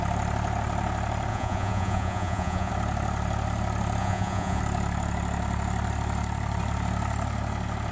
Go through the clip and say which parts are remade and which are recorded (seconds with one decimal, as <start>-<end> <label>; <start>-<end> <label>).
0.0-1.3 recorded; 1.3-2.7 remade; 2.7-4.0 recorded; 4.0-4.6 remade; 4.6-7.9 recorded